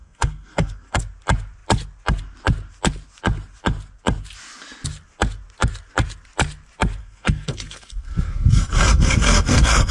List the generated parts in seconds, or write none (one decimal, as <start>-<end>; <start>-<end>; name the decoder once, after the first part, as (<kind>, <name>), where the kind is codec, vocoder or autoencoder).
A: 0.0-1.0 (codec, SNAC); 7.0-9.9